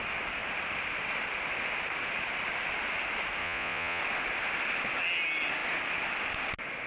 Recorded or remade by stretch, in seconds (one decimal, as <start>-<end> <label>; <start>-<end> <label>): 0.0-3.4 recorded; 3.4-4.0 remade; 4.0-6.9 recorded